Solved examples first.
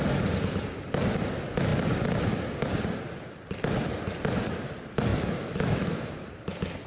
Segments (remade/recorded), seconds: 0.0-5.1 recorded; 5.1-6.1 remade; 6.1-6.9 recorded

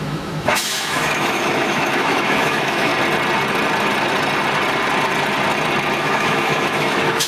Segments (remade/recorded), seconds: 0.0-2.9 remade; 2.9-6.0 recorded; 6.0-7.3 remade

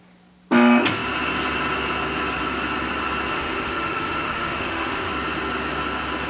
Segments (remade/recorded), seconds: 0.0-3.3 recorded; 3.3-5.1 remade; 5.1-6.3 recorded